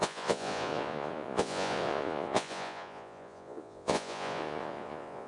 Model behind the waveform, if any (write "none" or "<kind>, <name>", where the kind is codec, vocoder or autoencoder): vocoder, Vocos